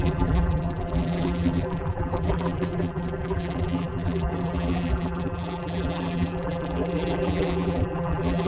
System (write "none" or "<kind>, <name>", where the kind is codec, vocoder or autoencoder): vocoder, BigVGAN v2